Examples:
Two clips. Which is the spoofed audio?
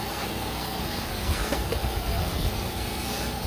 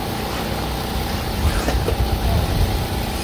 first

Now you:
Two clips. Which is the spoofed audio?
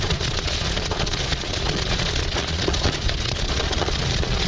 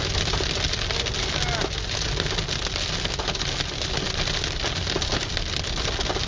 first